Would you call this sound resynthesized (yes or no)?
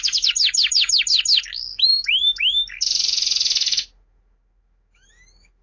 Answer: yes